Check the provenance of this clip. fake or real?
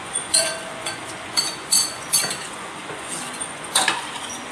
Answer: fake